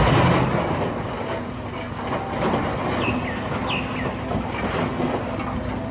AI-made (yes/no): no